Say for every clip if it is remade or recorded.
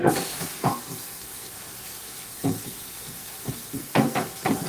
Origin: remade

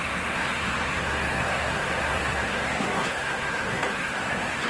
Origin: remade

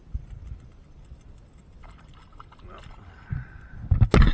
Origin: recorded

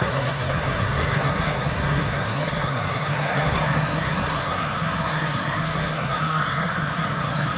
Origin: remade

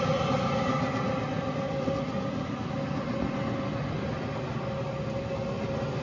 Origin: recorded